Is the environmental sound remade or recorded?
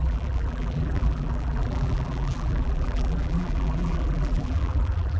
remade